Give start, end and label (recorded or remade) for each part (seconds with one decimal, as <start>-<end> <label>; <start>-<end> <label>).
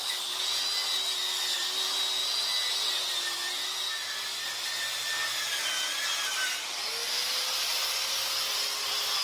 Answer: 0.0-9.2 recorded